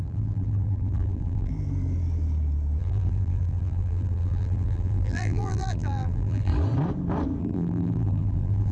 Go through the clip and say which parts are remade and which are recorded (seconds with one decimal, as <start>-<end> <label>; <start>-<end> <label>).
0.0-1.5 remade; 1.5-2.8 recorded; 2.8-6.5 remade; 6.5-7.4 recorded; 7.4-8.7 remade